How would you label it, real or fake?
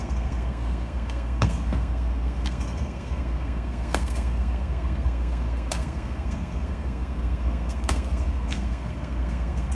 fake